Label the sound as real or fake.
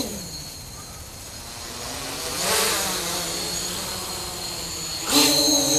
real